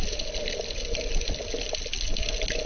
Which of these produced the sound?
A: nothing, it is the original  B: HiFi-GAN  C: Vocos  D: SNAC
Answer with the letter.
A